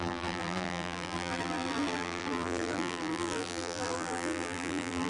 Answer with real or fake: fake